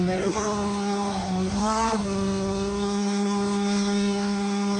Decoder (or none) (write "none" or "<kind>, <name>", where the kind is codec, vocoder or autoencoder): codec, SNAC